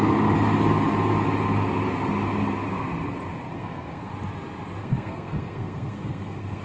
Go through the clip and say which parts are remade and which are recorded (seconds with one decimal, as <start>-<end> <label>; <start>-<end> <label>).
0.0-3.5 recorded; 3.5-4.1 remade; 4.1-4.8 recorded; 4.8-6.6 remade